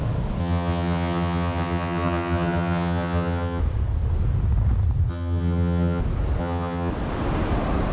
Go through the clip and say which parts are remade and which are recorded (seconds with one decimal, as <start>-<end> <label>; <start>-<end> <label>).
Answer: 0.0-0.4 recorded; 0.4-3.6 remade; 3.6-5.1 recorded; 5.1-6.0 remade; 6.0-6.4 recorded; 6.4-6.9 remade; 6.9-7.9 recorded